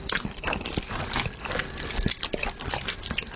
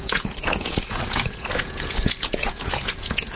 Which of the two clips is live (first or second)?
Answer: first